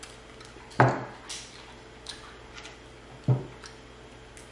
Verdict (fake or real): real